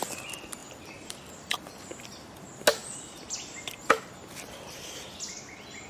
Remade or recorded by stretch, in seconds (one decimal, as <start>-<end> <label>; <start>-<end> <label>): 0.0-0.6 recorded; 0.6-1.7 remade; 1.7-5.9 recorded